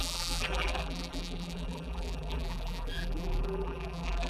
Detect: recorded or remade remade